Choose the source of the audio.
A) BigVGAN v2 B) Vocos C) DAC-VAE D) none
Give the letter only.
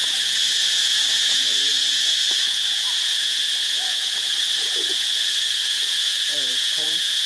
B